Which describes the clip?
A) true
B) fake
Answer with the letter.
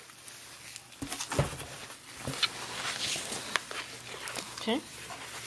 A